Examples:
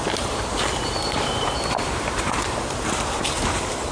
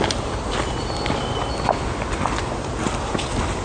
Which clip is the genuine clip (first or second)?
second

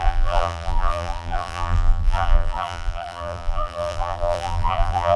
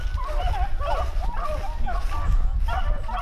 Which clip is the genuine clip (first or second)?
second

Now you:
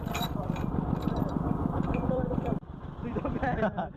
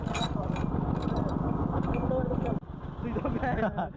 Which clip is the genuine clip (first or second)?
second